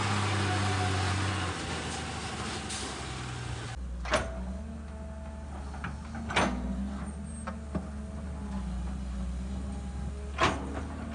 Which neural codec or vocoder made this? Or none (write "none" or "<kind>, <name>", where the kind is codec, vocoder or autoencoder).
none